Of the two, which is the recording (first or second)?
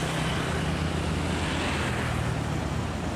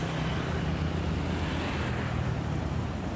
first